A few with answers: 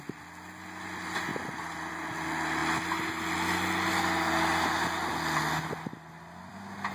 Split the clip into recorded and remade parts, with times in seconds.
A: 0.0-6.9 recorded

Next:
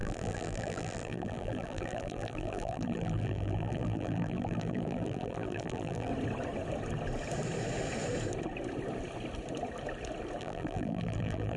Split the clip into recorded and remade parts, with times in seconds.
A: 0.0-6.1 remade; 6.1-10.4 recorded; 10.4-11.6 remade

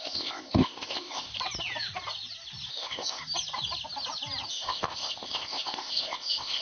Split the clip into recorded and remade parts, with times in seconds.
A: 0.0-1.3 remade; 1.3-2.7 recorded; 2.7-3.2 remade; 3.2-4.5 recorded; 4.5-6.6 remade